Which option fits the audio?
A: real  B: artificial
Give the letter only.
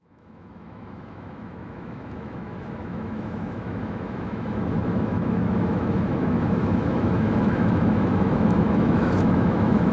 B